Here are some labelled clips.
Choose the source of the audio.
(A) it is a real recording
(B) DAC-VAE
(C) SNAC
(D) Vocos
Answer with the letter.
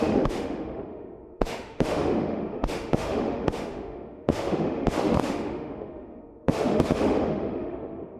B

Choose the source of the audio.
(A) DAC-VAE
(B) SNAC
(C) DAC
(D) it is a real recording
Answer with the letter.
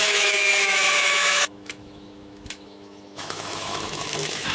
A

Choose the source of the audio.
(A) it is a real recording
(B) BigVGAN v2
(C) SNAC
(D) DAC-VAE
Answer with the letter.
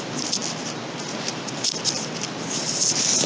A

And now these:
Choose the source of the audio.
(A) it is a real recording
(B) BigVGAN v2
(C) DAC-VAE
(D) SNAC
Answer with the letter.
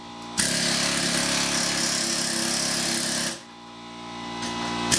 A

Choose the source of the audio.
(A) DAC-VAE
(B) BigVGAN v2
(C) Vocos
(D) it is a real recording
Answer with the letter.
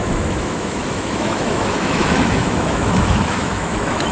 A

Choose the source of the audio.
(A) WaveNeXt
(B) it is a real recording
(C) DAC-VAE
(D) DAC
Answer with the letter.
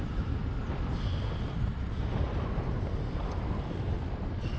B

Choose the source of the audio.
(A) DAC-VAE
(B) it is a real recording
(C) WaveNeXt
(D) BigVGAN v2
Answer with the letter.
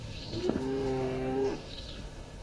A